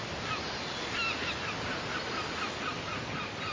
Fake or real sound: real